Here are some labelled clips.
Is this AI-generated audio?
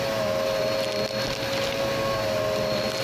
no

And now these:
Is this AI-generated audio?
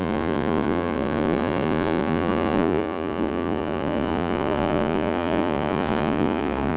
yes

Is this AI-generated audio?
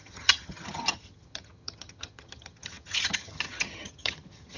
yes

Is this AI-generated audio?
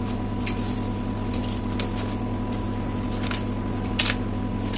no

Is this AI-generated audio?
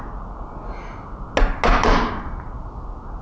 no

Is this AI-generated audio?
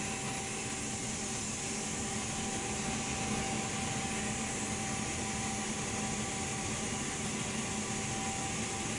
no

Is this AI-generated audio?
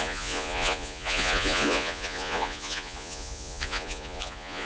yes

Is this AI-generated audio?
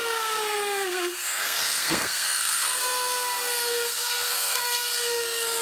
yes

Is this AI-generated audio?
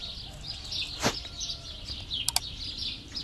no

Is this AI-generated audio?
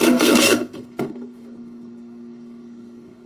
yes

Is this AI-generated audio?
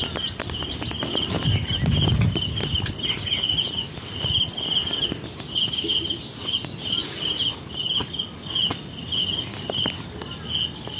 no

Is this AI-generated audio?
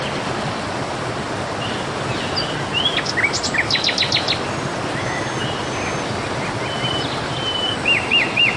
no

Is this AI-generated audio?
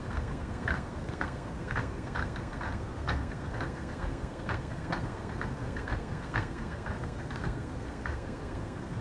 yes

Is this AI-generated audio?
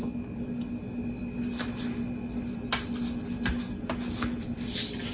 no